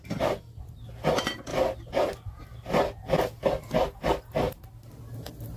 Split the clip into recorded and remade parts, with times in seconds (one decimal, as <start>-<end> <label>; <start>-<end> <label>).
0.0-5.6 recorded